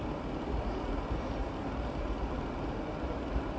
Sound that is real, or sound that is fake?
real